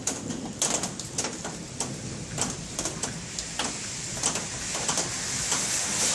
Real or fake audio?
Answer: real